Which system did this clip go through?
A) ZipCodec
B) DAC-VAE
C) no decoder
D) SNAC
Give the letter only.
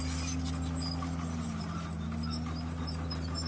C